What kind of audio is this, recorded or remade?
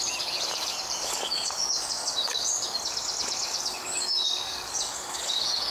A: remade